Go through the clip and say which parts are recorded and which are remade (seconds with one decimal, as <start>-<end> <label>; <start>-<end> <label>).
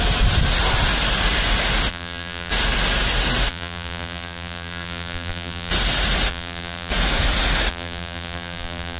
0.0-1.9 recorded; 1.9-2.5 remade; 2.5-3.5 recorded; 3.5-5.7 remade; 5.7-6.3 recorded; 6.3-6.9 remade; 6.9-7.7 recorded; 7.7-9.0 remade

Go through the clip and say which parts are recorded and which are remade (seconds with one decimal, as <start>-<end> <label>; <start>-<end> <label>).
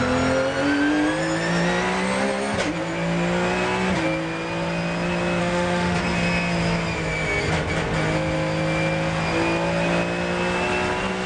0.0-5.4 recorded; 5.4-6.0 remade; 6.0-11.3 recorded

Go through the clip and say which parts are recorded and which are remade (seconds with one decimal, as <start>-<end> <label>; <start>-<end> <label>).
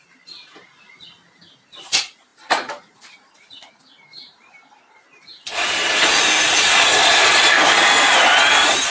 0.0-8.9 recorded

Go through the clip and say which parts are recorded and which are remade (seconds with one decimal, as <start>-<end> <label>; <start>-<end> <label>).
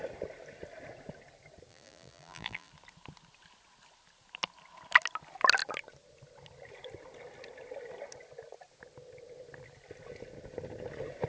0.0-1.7 recorded; 1.7-2.7 remade; 2.7-11.3 recorded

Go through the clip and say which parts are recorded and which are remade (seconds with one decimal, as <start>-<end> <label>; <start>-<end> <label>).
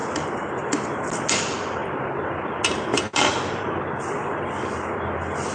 0.0-5.5 recorded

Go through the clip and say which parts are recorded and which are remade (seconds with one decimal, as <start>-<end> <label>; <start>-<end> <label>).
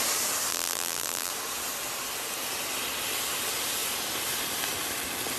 0.0-0.5 recorded; 0.5-1.3 remade; 1.3-5.4 recorded